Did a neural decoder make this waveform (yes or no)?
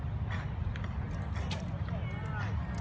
no